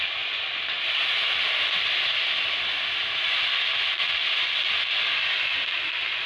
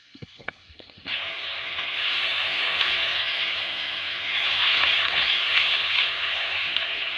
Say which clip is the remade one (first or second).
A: second